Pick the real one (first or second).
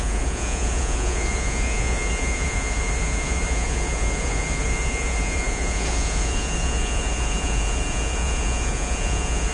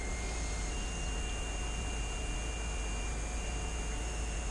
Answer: second